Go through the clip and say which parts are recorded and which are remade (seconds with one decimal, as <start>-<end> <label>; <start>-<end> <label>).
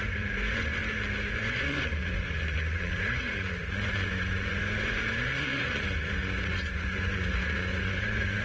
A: 0.0-0.8 remade; 0.8-1.3 recorded; 1.3-8.4 remade